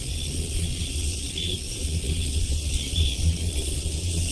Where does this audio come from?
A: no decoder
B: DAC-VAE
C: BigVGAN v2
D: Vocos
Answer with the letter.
D